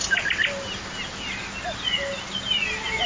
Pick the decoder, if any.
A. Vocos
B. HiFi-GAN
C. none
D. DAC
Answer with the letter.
C